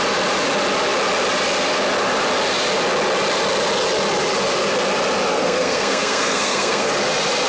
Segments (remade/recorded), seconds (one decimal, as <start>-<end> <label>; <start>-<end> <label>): 0.0-5.3 recorded; 5.3-6.9 remade; 6.9-7.5 recorded